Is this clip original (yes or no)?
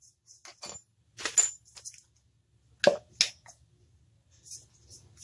yes